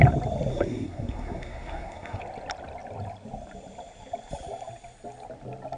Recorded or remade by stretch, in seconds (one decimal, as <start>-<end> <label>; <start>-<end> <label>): 0.0-0.5 recorded; 0.5-2.2 remade; 2.2-5.8 recorded